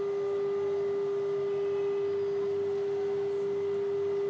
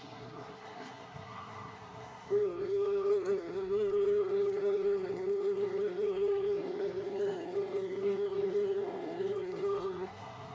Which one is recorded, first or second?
first